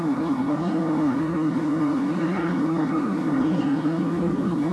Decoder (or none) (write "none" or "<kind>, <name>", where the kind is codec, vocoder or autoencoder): codec, SNAC